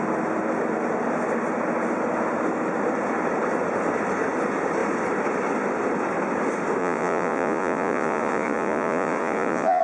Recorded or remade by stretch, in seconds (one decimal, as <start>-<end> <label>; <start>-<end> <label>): 0.0-6.8 recorded; 6.8-9.8 remade